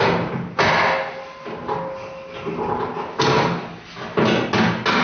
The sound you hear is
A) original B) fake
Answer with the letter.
A